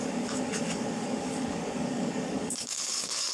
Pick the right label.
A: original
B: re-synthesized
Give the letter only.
B